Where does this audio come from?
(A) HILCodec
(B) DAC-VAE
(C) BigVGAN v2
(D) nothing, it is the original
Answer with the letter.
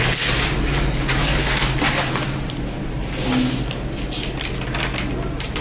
D